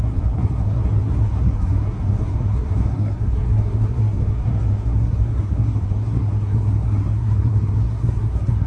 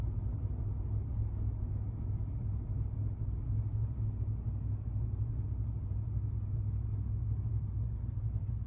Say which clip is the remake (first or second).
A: first